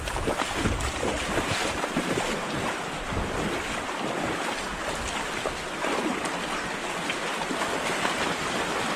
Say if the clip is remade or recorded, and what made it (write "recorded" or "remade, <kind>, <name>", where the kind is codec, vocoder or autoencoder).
recorded